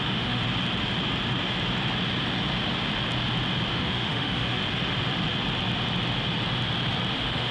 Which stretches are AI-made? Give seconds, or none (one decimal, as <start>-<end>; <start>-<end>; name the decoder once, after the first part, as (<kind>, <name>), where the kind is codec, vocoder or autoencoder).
0.0-0.4 (autoencoder, DAC-VAE); 3.7-4.6; 7.1-7.5